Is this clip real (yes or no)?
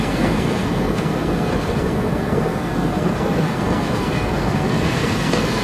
no